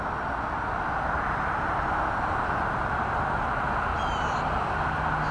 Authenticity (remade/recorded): recorded